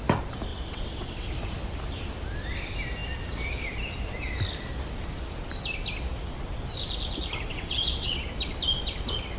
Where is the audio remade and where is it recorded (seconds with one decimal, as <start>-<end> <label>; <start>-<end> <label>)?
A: 0.0-0.5 recorded; 0.5-1.3 remade; 1.3-7.5 recorded; 7.5-8.2 remade; 8.2-9.4 recorded